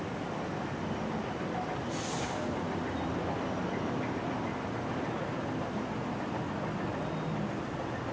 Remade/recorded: recorded